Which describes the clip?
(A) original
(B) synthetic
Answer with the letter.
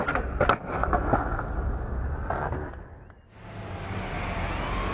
A